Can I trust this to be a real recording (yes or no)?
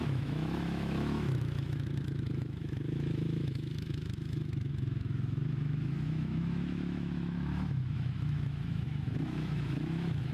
no